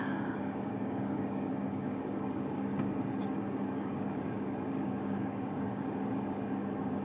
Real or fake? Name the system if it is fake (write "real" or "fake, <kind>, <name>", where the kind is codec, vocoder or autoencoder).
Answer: fake, codec, DAC